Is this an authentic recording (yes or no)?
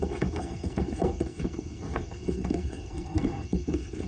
no